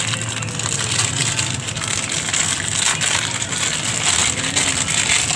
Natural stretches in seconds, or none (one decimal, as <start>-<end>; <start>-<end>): 0.0-5.4